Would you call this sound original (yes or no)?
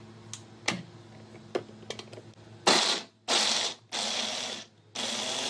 yes